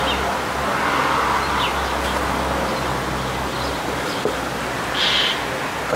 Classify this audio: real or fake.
real